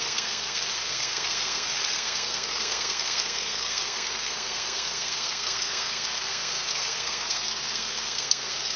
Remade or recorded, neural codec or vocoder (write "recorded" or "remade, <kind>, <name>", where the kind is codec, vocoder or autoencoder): remade, codec, SNAC